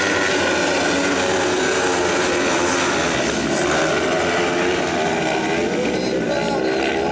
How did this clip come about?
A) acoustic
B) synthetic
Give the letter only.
A